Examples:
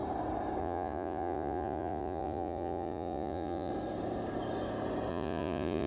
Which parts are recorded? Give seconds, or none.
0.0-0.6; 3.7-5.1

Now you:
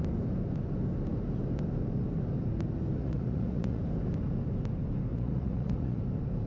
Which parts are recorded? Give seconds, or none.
0.0-3.0; 3.8-5.1; 6.0-6.5

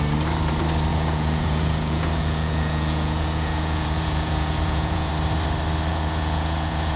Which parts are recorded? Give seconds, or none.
0.0-0.9; 5.1-5.9

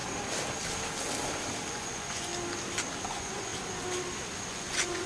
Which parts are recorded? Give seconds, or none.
0.0-1.7; 2.3-3.1; 3.5-4.5